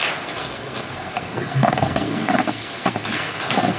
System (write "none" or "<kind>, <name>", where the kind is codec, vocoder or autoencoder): codec, SNAC